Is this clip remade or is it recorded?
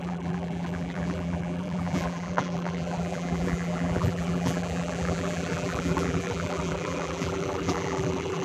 remade